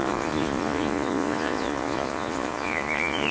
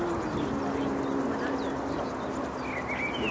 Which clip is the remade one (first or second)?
first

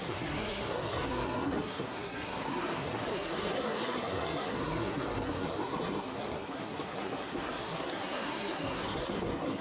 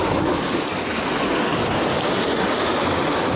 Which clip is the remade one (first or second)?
first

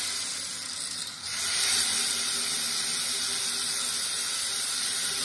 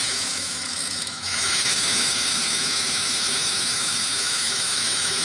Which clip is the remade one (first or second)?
second